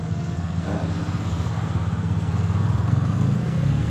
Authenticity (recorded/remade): remade